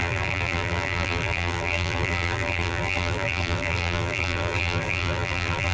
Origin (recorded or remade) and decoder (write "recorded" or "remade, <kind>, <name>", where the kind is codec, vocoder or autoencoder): remade, vocoder, BigVGAN v2